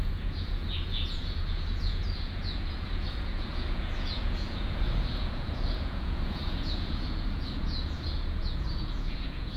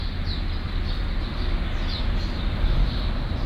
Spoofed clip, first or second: first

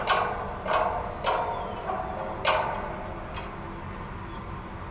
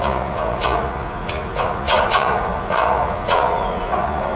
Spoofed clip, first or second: second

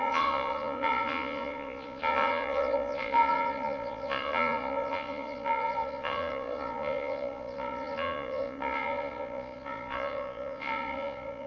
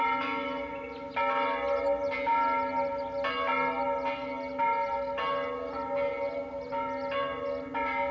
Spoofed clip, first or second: first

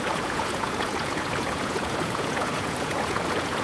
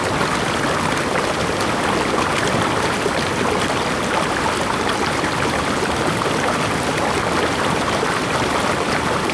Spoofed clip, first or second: first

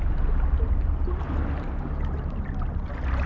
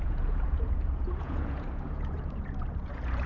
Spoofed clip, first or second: second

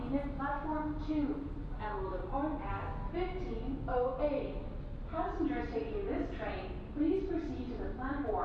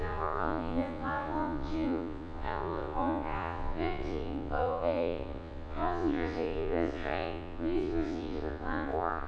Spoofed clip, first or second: second